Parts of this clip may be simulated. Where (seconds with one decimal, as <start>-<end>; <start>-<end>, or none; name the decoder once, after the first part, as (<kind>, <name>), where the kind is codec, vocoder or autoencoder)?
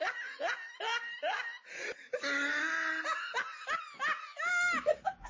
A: 4.5-5.3 (autoencoder, DAC-VAE)